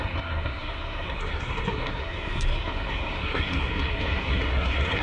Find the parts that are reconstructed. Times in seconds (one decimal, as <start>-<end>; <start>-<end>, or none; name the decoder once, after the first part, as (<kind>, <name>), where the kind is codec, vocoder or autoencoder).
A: 0.0-5.0 (codec, SNAC)